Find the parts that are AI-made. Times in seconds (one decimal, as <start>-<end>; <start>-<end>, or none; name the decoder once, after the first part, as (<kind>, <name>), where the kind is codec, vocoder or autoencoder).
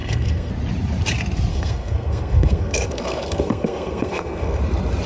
0.0-0.5 (codec, SNAC); 1.5-4.6